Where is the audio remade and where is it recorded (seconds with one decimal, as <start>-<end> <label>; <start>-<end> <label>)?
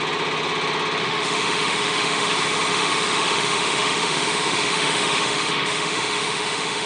0.0-1.0 recorded; 1.0-2.3 remade; 2.3-2.7 recorded; 2.7-6.9 remade